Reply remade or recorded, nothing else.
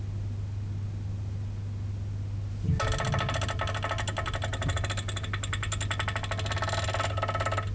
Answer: recorded